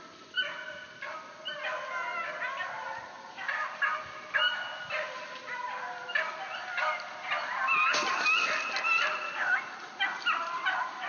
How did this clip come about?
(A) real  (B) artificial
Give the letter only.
A